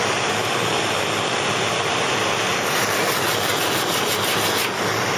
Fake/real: fake